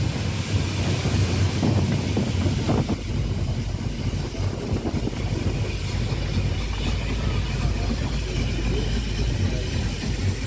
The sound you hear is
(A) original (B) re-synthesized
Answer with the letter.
A